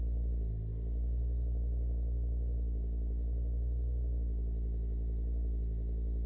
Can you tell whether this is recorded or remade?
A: recorded